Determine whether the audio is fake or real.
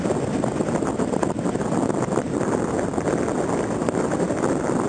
real